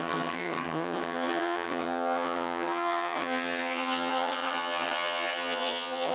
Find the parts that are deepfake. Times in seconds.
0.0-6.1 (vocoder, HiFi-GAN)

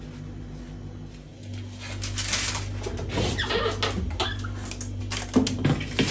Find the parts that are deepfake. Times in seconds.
none

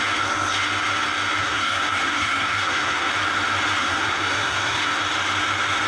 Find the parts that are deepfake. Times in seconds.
1.4-3.1 (codec, SNAC); 3.8-5.0

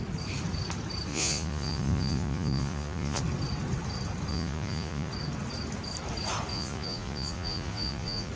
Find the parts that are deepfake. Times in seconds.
1.1-3.2 (vocoder, Vocos); 4.3-5.1; 6.5-8.3

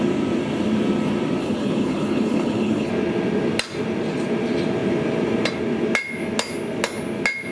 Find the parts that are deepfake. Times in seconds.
1.4-2.9 (codec, HILCodec)